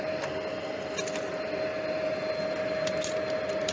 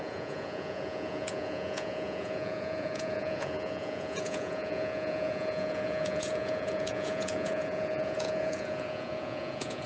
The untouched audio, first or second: first